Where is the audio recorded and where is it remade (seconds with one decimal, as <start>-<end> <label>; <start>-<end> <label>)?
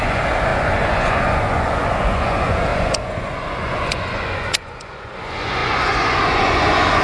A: 0.0-7.0 remade